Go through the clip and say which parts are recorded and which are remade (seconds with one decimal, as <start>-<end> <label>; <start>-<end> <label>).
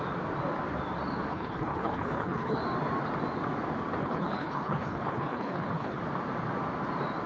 0.0-1.3 recorded; 1.3-2.6 remade; 2.6-4.0 recorded; 4.0-6.0 remade; 6.0-7.3 recorded